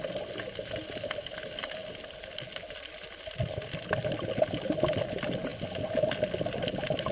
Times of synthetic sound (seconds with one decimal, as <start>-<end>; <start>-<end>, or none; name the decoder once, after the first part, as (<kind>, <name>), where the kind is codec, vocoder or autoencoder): none